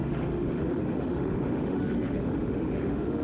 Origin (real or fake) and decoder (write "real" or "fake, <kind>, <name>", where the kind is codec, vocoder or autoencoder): fake, autoencoder, DAC-VAE